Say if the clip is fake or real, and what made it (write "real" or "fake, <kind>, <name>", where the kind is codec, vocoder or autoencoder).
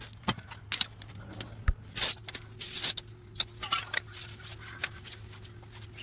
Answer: real